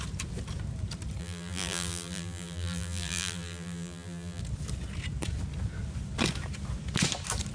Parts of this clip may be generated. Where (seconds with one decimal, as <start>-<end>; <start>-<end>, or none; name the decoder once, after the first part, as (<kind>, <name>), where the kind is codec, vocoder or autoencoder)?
1.2-4.4 (vocoder, BigVGAN v2)

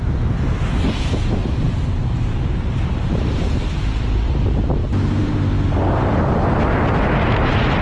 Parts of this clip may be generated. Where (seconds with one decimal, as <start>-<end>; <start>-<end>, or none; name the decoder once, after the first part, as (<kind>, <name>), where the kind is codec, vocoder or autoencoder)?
0.0-0.6 (vocoder, BigVGAN v2); 1.4-3.7

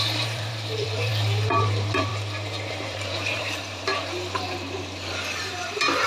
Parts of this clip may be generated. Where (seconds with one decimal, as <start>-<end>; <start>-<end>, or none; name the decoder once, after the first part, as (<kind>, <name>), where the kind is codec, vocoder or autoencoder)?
0.0-1.1 (vocoder, BigVGAN v2); 1.6-2.1; 2.7-3.9; 5.4-6.1